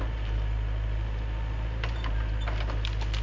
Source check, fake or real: real